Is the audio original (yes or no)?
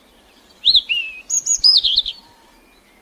no